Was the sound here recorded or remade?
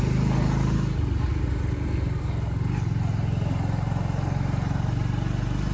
recorded